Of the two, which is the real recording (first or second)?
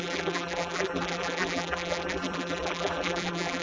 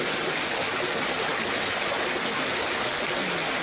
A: second